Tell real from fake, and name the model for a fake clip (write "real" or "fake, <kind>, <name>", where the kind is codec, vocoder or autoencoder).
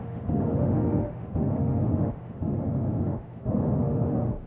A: fake, autoencoder, DAC-VAE